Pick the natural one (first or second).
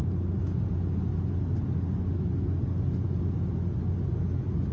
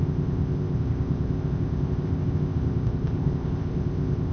first